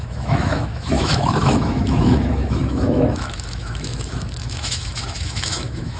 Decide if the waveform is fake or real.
fake